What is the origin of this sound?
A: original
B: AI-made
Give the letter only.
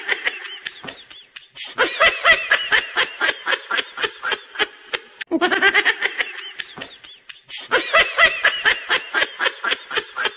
A